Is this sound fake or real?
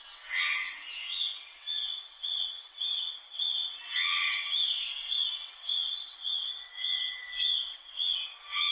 fake